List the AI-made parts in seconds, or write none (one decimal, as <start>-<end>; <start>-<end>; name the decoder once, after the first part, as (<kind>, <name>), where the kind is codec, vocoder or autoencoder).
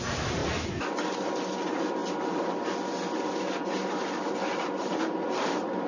4.8-5.9 (vocoder, BigVGAN v2)